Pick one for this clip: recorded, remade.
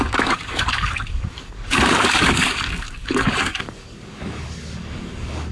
remade